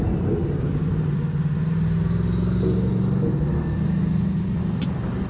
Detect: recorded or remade recorded